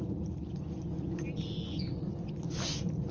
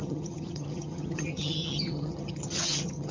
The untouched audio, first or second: first